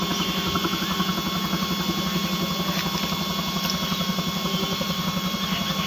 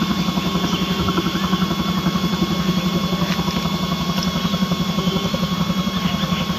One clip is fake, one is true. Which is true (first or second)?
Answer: first